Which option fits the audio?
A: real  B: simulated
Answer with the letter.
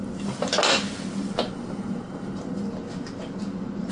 A